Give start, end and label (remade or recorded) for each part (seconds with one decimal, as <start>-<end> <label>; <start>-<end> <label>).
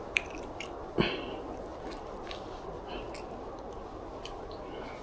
0.0-1.7 recorded; 1.7-3.7 remade; 3.7-5.0 recorded